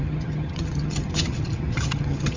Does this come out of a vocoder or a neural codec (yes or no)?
yes